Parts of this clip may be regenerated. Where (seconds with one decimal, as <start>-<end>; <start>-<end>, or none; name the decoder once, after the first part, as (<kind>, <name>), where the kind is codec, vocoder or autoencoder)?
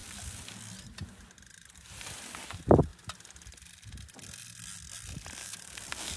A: 5.4-6.2 (codec, DAC)